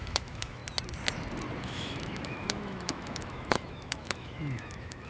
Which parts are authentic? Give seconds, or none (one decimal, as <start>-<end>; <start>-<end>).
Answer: 0.6-1.6